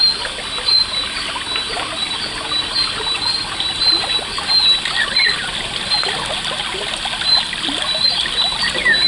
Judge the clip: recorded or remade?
recorded